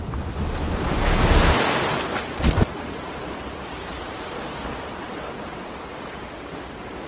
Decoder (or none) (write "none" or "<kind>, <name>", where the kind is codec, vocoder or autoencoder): none